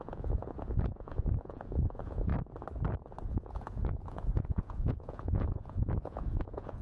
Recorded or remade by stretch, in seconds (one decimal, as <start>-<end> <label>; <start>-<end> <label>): 0.0-2.3 remade; 2.3-3.3 recorded; 3.3-6.8 remade

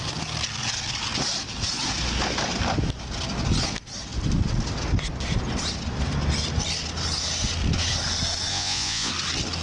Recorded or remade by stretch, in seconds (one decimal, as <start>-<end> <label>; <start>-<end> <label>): 0.0-8.5 recorded; 8.5-9.1 remade; 9.1-9.6 recorded

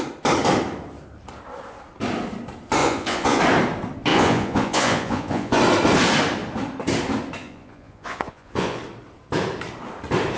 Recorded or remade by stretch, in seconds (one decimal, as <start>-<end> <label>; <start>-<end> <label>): 0.0-2.8 recorded; 2.8-3.4 remade; 3.4-4.1 recorded; 4.1-5.6 remade; 5.6-7.4 recorded; 7.4-8.8 remade; 8.8-10.4 recorded

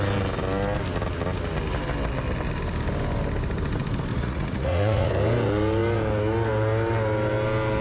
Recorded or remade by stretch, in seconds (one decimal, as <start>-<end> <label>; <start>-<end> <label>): 0.0-4.1 recorded; 4.1-5.1 remade; 5.1-7.8 recorded

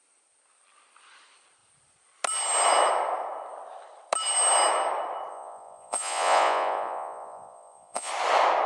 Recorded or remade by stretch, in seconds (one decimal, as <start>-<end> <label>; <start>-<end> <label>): 0.0-5.3 recorded; 5.3-8.1 remade; 8.1-8.7 recorded

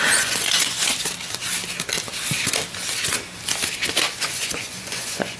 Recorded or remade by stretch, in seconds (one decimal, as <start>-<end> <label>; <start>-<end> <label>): 0.0-0.8 remade; 0.8-4.0 recorded; 4.0-5.4 remade

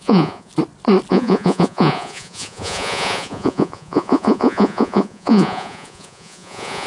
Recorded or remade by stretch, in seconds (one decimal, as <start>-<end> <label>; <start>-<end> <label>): 0.0-0.5 remade; 0.5-1.1 recorded; 1.1-6.9 remade